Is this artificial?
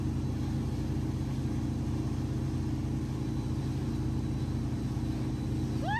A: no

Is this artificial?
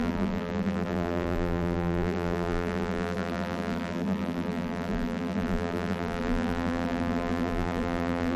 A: yes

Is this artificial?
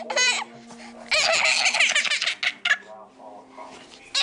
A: no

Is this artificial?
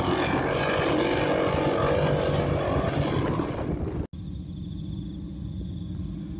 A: no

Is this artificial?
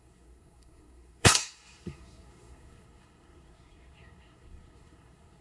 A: yes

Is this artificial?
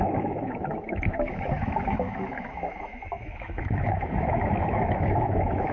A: yes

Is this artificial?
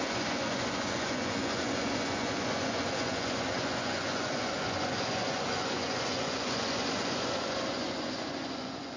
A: yes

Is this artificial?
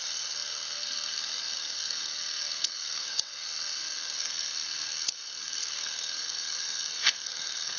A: yes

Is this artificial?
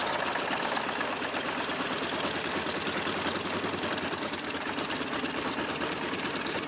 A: no